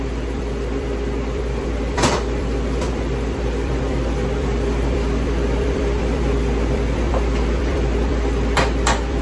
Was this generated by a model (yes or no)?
yes